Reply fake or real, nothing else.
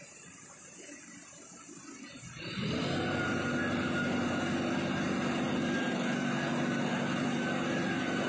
real